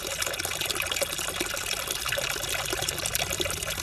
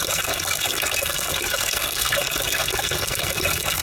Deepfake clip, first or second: second